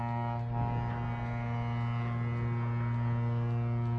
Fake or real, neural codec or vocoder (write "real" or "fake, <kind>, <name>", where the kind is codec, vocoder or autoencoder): real